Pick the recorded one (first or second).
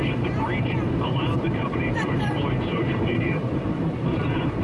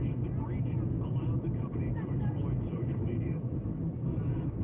second